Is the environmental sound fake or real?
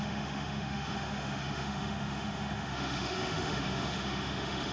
fake